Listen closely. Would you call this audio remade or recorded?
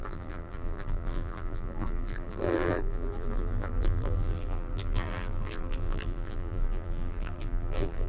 remade